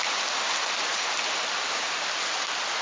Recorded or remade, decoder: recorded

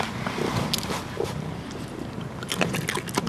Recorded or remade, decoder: recorded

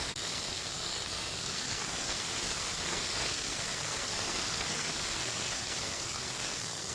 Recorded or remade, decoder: remade, codec, SNAC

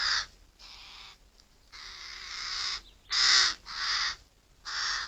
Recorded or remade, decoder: recorded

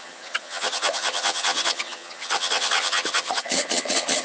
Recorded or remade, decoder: remade, vocoder, HiFi-GAN